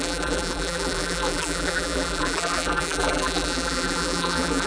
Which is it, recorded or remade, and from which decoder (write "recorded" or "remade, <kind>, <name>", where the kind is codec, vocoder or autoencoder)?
remade, vocoder, BigVGAN v2